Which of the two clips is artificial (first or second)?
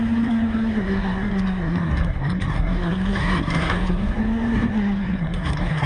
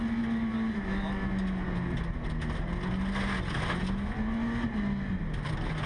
first